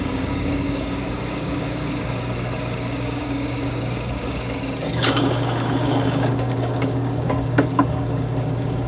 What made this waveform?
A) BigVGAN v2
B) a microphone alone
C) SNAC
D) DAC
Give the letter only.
D